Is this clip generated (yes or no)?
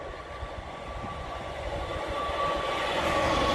yes